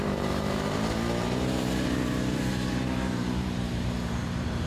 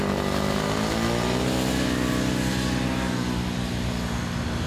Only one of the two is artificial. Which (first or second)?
first